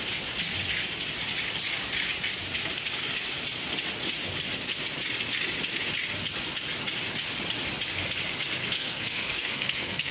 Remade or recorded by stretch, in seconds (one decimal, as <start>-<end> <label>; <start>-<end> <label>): 0.0-8.6 recorded; 8.6-10.1 remade